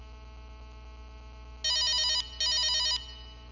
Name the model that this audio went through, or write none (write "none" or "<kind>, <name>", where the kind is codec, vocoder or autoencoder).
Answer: none